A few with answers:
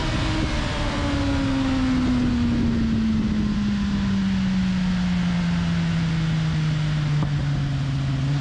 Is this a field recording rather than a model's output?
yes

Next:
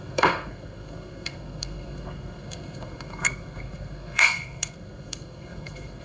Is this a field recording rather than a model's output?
no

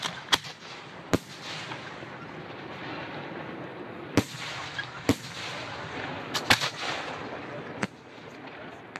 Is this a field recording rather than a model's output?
yes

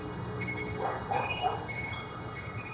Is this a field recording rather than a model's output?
no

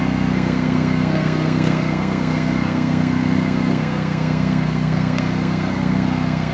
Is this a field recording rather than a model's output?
no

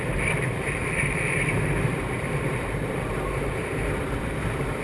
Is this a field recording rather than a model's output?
no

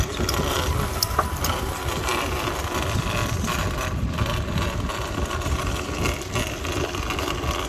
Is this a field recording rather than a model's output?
yes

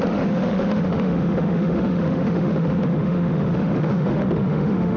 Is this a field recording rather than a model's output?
no